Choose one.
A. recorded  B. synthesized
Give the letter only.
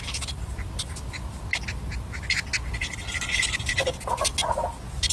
A